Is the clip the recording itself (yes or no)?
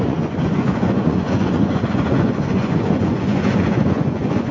no